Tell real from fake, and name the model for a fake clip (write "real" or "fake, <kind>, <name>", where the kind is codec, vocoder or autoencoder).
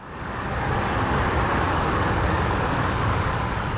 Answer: fake, codec, DAC